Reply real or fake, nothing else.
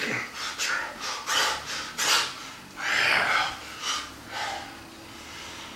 real